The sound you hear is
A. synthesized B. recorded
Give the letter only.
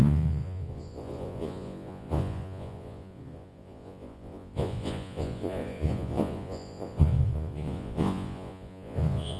A